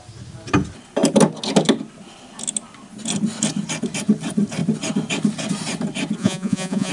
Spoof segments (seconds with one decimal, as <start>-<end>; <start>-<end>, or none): 6.2-6.9

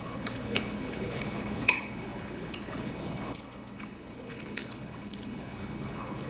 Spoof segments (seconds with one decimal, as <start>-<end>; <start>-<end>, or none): 0.0-6.3

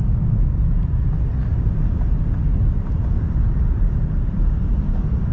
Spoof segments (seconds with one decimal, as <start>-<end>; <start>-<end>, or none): none

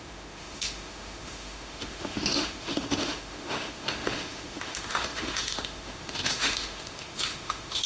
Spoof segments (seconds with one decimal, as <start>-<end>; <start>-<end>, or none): 0.0-7.9

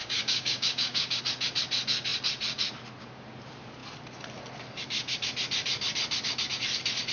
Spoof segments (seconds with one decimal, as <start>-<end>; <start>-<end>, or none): 0.0-1.2

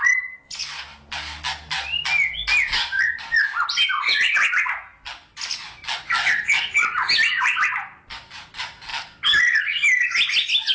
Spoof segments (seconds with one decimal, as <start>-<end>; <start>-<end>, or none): none

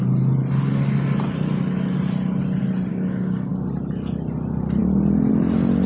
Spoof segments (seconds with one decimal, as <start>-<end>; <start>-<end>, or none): 2.9-3.5

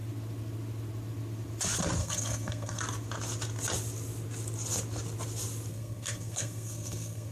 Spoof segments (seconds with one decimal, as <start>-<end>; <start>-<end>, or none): 2.0-2.8; 5.7-7.3